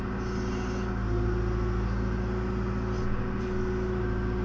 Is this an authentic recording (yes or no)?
yes